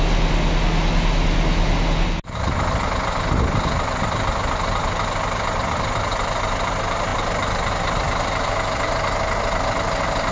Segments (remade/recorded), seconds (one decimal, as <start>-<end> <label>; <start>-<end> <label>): 0.0-10.3 recorded